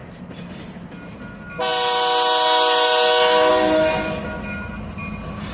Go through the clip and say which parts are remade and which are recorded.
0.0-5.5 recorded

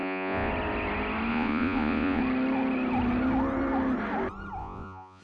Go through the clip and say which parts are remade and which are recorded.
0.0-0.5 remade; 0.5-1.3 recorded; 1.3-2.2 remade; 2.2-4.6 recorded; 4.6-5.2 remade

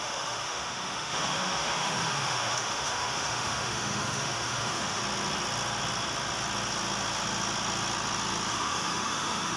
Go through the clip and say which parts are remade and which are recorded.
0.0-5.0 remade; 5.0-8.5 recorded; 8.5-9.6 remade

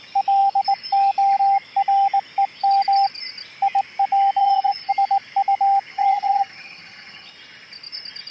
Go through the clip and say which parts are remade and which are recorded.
0.0-4.4 recorded; 4.4-4.9 remade; 4.9-5.9 recorded; 5.9-7.3 remade; 7.3-8.3 recorded

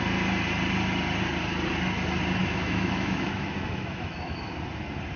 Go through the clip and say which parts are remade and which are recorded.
0.0-2.4 recorded; 2.4-4.5 remade; 4.5-5.2 recorded

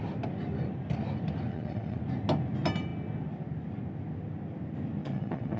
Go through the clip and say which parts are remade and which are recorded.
0.0-1.5 recorded; 1.5-2.0 remade; 2.0-5.0 recorded; 5.0-5.6 remade